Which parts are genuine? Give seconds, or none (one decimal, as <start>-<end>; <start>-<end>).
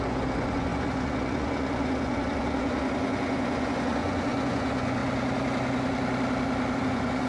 5.0-6.8